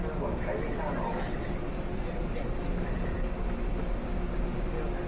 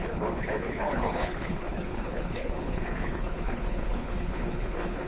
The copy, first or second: second